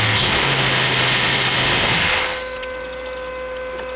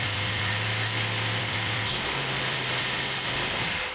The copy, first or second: second